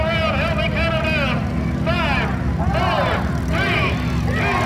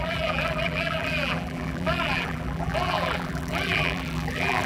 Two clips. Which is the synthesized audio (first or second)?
second